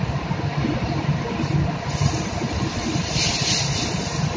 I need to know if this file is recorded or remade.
recorded